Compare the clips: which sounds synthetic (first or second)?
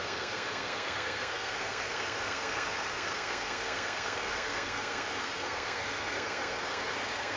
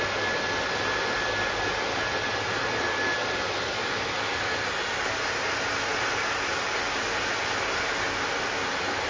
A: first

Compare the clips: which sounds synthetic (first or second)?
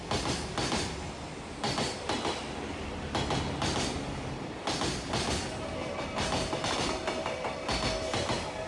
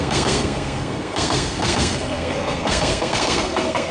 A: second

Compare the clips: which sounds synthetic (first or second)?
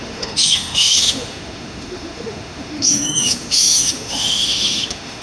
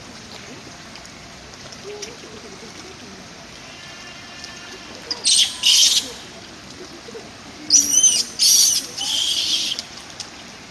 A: first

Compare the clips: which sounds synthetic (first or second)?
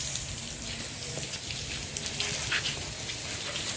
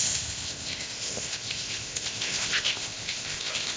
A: second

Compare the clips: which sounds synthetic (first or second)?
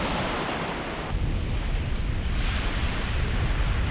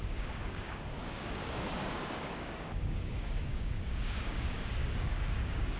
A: second